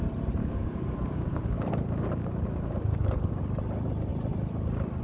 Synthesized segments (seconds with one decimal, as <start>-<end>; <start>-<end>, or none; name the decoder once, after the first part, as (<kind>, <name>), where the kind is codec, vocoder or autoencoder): 0.4-3.4 (codec, DAC)